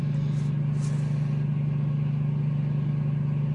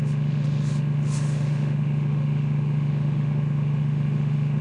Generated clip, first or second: second